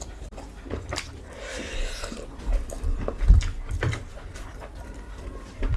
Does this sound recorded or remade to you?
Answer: remade